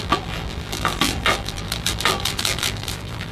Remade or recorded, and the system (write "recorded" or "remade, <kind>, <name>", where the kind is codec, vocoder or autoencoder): remade, vocoder, BigVGAN v2